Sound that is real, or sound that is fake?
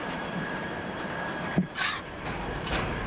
fake